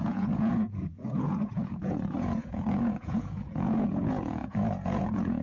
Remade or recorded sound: remade